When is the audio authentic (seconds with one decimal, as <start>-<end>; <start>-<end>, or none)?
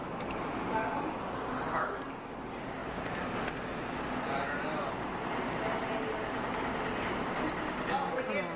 0.0-8.6